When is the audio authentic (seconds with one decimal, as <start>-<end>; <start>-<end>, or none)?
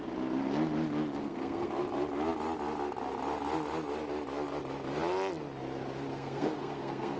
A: 0.0-1.2; 1.7-6.1